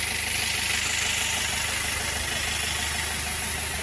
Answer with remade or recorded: recorded